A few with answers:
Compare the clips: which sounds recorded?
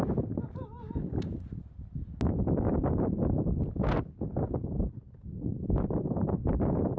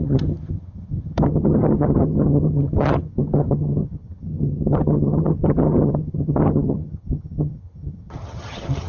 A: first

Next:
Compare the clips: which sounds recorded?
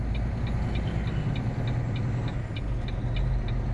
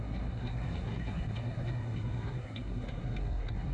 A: first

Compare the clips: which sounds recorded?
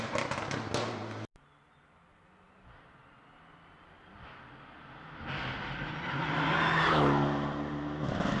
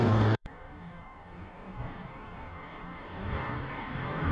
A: first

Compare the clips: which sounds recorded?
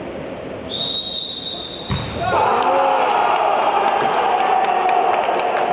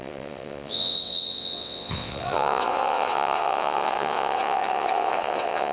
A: first